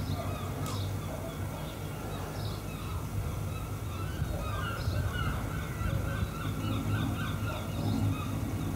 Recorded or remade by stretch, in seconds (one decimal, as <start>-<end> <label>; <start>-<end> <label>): 0.0-8.8 recorded